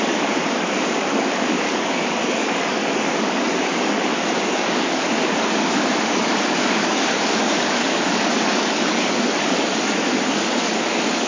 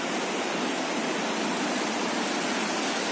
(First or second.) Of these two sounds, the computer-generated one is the first